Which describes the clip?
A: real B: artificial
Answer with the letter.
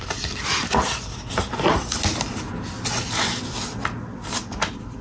A